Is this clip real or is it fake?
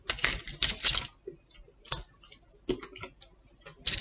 real